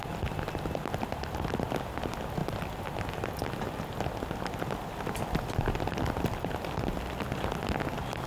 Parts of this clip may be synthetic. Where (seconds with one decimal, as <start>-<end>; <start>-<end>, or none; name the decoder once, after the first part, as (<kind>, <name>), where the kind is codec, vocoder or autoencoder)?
none